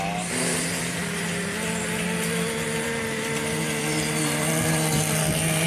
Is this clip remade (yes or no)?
no